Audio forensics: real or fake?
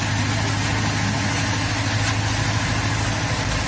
real